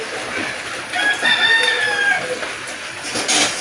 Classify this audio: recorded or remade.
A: recorded